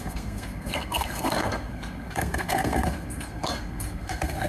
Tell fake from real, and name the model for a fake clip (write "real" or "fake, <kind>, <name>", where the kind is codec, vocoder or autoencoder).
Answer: fake, codec, SNAC